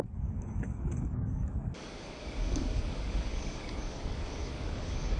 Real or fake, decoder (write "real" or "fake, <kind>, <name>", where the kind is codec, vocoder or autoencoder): fake, codec, DAC